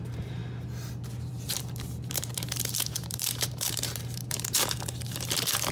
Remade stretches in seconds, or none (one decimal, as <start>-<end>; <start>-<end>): 0.0-0.4; 1.3-5.7

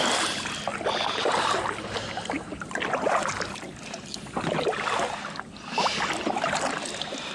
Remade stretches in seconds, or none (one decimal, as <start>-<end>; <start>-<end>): 0.7-1.8

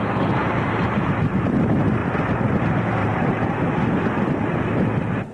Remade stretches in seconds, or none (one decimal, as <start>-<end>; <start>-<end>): 0.4-1.2; 3.0-3.7

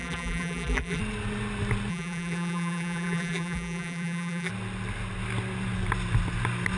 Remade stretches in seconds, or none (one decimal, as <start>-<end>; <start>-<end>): 0.0-1.0; 1.9-4.5